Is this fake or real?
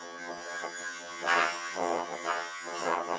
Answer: fake